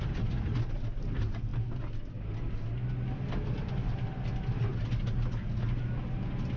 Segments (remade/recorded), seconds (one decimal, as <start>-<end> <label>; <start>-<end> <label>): 0.0-6.6 recorded